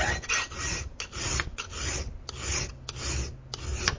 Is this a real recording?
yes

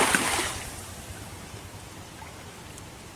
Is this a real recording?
no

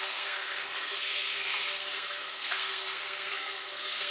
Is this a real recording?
no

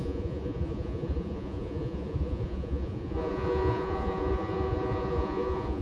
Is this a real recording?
no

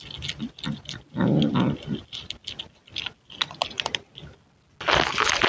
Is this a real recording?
yes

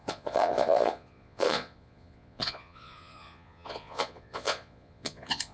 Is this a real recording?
no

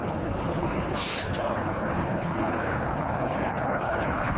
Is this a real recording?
no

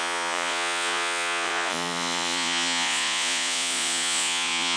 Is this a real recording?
no